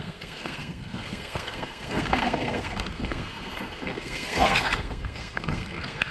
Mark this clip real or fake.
fake